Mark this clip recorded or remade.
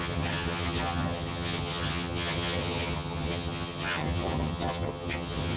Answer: remade